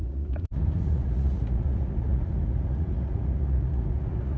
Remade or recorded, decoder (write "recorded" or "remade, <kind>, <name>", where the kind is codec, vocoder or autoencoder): remade, vocoder, Vocos